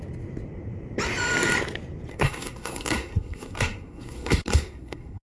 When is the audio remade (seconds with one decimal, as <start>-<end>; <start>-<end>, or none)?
2.1-5.2